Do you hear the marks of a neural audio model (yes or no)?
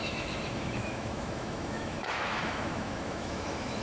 yes